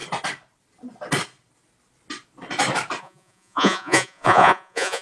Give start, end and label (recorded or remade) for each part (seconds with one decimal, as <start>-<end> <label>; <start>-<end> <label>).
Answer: 0.0-3.0 recorded; 3.0-5.0 remade